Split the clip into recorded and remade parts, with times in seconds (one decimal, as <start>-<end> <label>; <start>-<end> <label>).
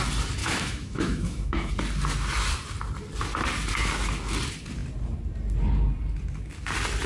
0.0-0.4 recorded; 0.4-1.7 remade; 1.7-7.1 recorded